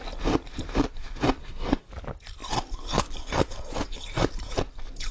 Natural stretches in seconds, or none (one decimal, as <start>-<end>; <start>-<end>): 0.0-1.4; 1.9-5.1